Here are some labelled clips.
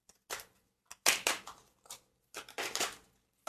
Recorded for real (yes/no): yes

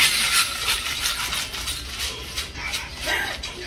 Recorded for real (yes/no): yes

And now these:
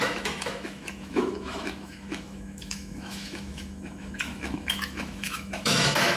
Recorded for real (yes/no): no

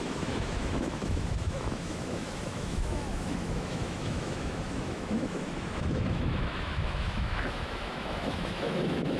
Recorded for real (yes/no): no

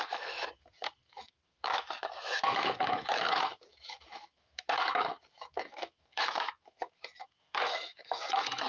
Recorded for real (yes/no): no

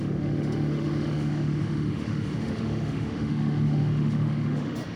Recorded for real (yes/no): no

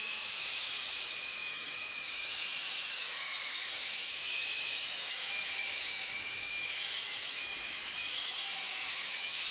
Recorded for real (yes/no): no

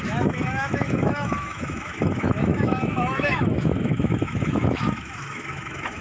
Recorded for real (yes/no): no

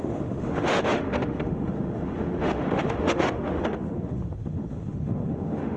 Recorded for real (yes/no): no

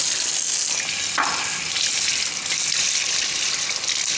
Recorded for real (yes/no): yes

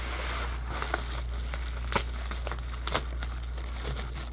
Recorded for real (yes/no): yes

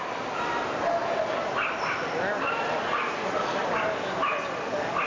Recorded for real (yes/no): yes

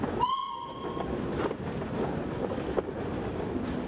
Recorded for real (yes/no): yes